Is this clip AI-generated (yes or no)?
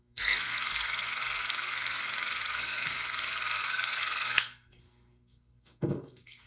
yes